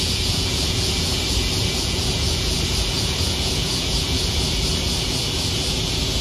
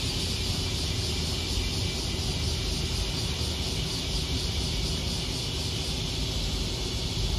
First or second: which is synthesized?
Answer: first